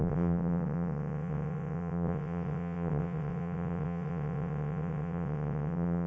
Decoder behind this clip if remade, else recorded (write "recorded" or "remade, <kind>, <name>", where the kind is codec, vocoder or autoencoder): remade, vocoder, WaveNeXt